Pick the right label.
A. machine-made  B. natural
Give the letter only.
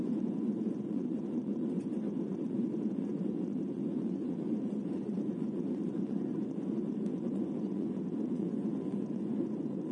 A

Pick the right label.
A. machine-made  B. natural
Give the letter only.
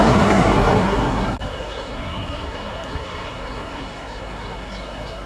A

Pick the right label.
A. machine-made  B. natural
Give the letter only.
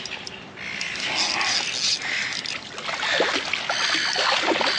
B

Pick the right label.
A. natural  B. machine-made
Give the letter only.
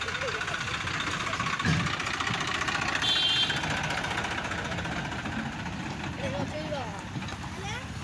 A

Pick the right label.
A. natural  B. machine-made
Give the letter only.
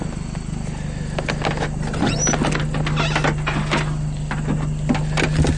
A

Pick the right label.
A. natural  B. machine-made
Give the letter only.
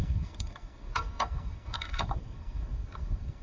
B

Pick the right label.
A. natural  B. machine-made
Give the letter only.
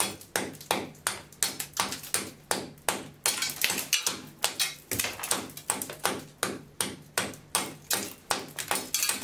A